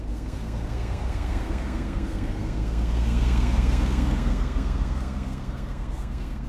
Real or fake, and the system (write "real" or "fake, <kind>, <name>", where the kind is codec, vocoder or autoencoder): fake, codec, SNAC